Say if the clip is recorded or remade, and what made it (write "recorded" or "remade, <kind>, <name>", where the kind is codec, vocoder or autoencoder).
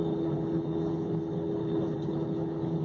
remade, codec, HILCodec